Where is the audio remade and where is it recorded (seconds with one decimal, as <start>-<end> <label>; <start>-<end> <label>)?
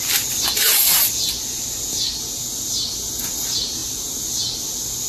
0.0-5.1 recorded